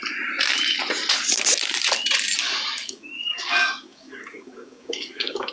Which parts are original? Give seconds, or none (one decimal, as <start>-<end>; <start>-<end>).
0.0-2.4